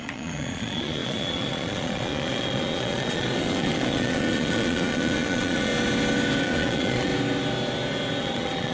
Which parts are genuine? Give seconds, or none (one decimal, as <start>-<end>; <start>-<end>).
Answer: 5.7-6.4; 7.1-8.2